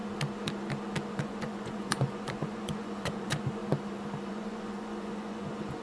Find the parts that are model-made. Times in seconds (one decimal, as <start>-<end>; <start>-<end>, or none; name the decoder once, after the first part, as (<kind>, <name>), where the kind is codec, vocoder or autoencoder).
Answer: 1.1-3.6 (vocoder, Vocos); 4.3-5.8